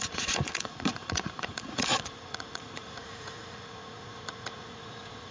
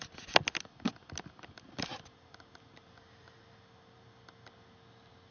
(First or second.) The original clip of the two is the second